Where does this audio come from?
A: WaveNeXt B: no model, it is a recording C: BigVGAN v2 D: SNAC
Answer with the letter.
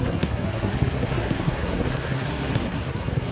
D